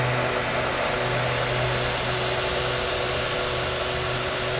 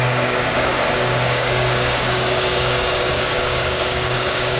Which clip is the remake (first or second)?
second